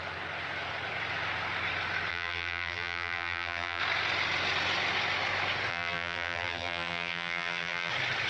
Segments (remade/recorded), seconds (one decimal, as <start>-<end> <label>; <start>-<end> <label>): 0.0-2.1 recorded; 2.1-3.8 remade; 3.8-5.7 recorded; 5.7-7.9 remade; 7.9-8.3 recorded

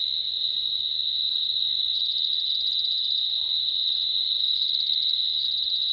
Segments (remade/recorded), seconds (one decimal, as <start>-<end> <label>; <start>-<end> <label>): 0.0-1.5 recorded; 1.5-2.0 remade; 2.0-5.9 recorded

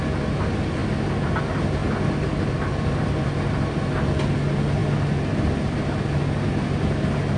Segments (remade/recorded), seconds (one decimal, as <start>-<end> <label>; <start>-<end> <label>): 0.0-7.4 recorded

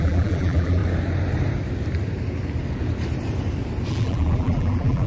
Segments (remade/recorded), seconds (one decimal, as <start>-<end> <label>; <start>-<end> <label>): 0.0-0.8 remade; 0.8-3.9 recorded; 3.9-5.1 remade

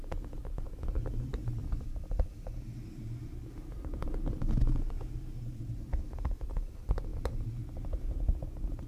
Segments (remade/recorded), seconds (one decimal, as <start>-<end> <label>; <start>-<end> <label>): 0.0-8.9 recorded